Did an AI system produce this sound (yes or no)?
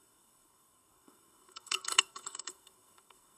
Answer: yes